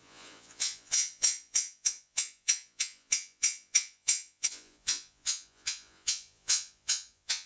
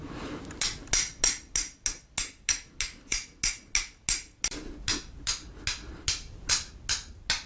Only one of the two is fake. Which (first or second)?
first